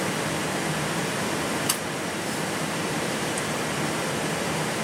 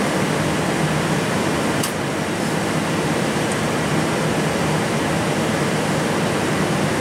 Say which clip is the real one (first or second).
second